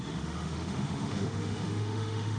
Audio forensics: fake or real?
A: fake